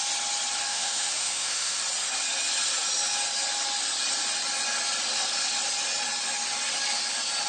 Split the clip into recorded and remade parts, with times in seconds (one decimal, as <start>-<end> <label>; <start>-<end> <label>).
0.0-0.7 recorded; 0.7-1.8 remade; 1.8-7.5 recorded